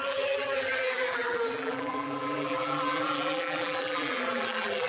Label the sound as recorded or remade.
remade